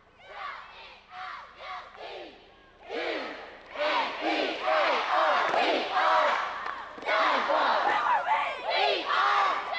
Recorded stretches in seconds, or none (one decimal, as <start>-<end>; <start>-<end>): 0.0-9.8